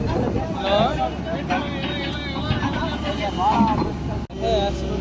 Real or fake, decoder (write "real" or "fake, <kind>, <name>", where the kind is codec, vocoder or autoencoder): real